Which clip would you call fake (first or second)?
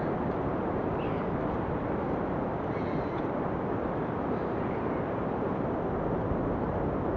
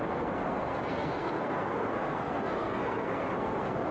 second